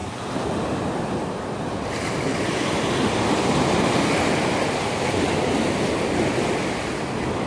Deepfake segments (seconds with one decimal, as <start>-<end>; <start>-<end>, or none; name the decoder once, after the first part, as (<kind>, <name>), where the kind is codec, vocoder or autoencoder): none